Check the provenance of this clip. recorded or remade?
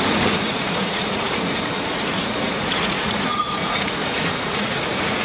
remade